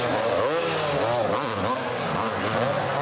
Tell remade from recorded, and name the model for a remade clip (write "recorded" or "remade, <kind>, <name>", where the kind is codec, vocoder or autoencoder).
recorded